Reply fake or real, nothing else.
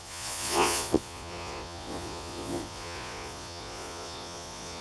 fake